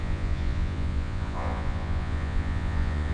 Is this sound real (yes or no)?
no